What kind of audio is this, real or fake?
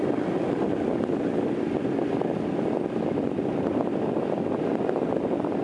real